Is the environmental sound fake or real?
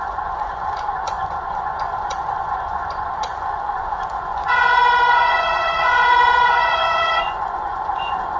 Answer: fake